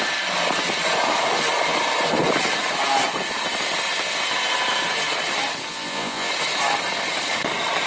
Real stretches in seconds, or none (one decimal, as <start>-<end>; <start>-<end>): 0.0-5.7; 6.3-7.9